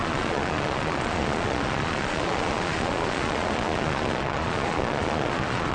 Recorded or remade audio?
remade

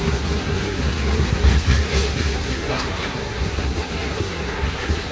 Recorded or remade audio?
remade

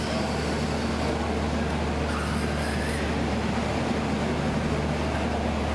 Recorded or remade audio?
recorded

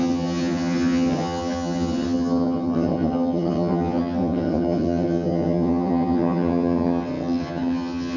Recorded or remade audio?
remade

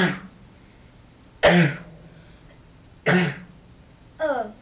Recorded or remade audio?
recorded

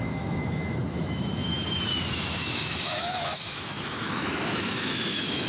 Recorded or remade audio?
remade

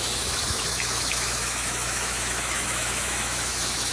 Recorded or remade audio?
remade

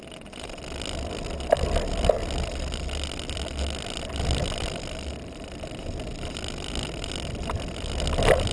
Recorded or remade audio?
recorded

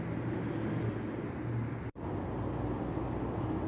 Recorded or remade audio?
recorded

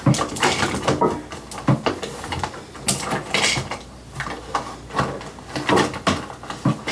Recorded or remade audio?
recorded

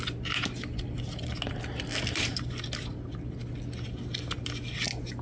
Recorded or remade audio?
recorded